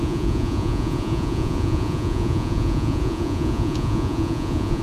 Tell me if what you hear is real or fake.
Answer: fake